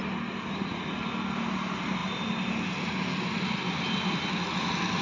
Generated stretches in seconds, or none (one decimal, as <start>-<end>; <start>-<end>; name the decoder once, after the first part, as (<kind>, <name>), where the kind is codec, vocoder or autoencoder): none